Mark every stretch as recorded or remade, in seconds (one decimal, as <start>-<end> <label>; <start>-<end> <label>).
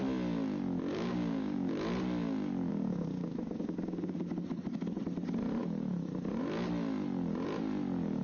0.0-0.9 recorded; 0.9-1.7 remade; 1.7-2.7 recorded; 2.7-4.3 remade; 4.3-8.2 recorded